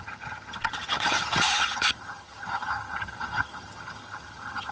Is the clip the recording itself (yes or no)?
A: no